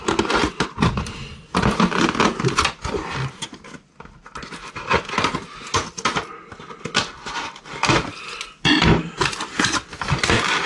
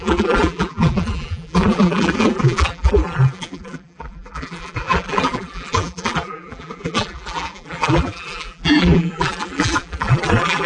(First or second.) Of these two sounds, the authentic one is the first